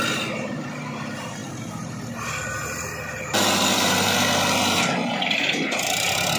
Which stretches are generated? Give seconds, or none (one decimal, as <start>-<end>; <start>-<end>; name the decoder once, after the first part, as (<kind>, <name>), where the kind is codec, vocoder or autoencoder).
0.0-6.4 (vocoder, BigVGAN v2)